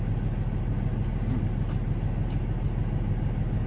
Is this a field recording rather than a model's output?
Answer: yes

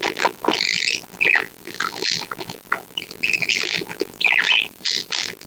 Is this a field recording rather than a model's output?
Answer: no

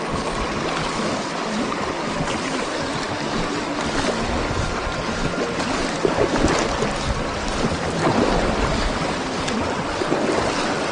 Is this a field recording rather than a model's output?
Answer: yes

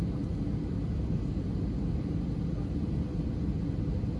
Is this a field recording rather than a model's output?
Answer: yes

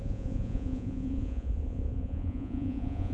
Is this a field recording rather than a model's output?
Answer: no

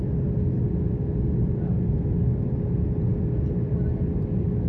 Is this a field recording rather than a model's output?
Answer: yes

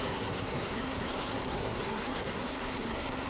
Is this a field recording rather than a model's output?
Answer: no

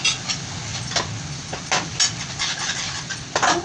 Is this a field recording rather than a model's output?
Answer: yes